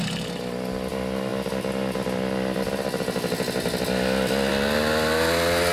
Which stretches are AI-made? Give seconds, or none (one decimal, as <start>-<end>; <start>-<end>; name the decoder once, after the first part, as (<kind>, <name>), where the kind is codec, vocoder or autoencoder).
none